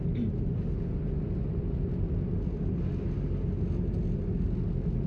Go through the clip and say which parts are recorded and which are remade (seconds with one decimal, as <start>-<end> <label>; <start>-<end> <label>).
0.0-5.1 recorded